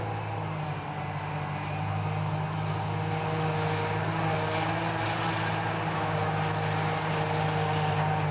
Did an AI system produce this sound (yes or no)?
no